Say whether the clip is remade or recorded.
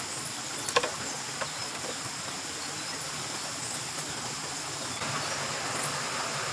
recorded